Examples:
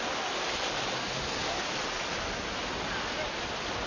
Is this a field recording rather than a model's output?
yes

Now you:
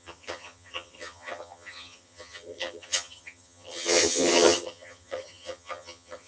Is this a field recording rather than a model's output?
no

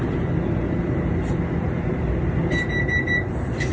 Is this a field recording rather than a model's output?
yes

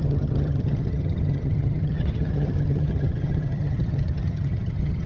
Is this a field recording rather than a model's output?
no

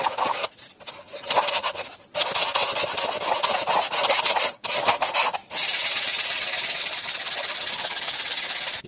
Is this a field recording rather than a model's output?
yes